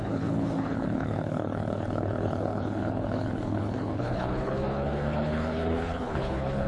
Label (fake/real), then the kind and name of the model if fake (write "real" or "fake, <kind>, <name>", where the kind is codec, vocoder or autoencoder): fake, codec, HILCodec